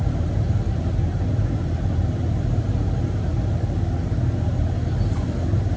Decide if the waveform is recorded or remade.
recorded